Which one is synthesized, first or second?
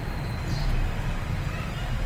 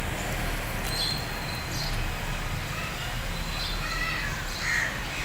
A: first